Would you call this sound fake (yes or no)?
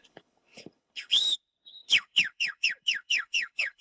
yes